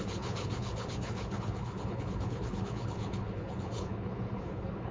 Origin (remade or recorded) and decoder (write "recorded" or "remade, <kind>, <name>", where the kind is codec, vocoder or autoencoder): remade, codec, HILCodec